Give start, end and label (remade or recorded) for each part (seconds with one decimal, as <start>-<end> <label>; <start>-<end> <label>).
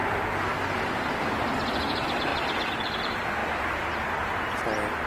0.0-0.5 recorded; 0.5-2.3 remade; 2.3-2.9 recorded; 2.9-3.4 remade; 3.4-4.6 recorded; 4.6-5.1 remade